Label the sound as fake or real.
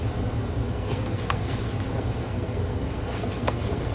fake